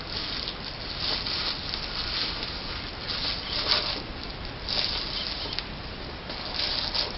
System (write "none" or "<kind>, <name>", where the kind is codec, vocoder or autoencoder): none